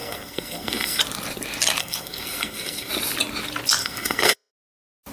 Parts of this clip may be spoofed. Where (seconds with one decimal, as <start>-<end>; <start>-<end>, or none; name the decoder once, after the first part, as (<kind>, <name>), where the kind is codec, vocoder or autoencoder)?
0.0-1.0 (codec, SNAC); 1.8-2.9; 3.8-4.5